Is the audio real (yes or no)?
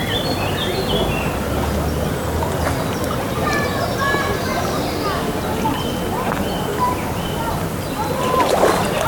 yes